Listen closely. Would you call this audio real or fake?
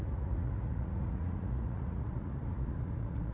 fake